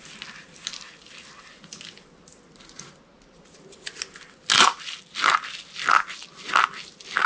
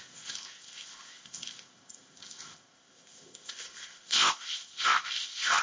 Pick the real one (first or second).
first